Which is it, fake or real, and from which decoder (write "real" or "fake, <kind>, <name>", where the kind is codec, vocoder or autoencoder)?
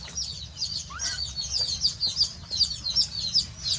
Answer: real